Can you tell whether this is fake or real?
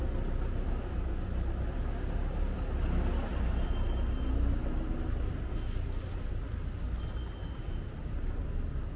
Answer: real